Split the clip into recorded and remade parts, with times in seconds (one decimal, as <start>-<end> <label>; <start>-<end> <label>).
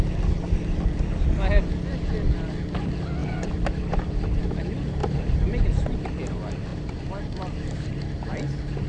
0.0-3.2 recorded; 3.2-4.4 remade; 4.4-5.0 recorded; 5.0-5.6 remade; 5.6-6.7 recorded; 6.7-8.3 remade; 8.3-8.9 recorded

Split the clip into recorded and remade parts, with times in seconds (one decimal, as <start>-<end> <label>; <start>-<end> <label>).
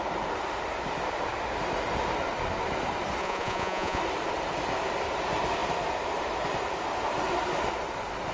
0.0-3.2 recorded; 3.2-4.0 remade; 4.0-8.3 recorded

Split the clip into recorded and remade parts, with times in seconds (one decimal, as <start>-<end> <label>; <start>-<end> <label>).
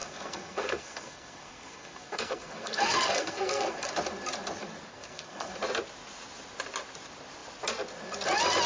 0.0-3.9 remade; 3.9-4.9 recorded; 4.9-5.5 remade; 5.5-8.7 recorded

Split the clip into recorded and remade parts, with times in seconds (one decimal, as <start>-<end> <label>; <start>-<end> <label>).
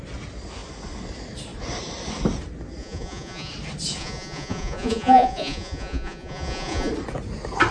0.0-2.8 recorded; 2.8-3.5 remade; 3.5-4.0 recorded; 4.0-6.9 remade; 6.9-7.7 recorded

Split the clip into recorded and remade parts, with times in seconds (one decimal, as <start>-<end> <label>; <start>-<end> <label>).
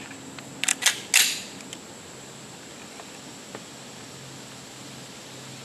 0.0-5.6 recorded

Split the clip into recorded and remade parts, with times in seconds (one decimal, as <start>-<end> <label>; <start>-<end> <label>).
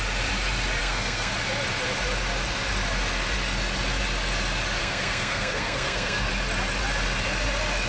0.0-0.8 recorded; 0.8-1.3 remade; 1.3-4.8 recorded; 4.8-6.3 remade; 6.3-7.9 recorded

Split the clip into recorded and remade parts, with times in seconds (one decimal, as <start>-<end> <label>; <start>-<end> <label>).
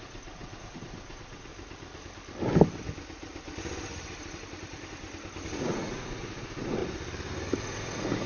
0.0-1.5 remade; 1.5-5.6 recorded; 5.6-6.8 remade; 6.8-7.6 recorded; 7.6-8.3 remade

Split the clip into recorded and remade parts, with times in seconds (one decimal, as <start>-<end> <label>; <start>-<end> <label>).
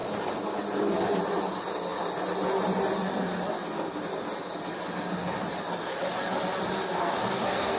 0.0-6.9 recorded; 6.9-7.8 remade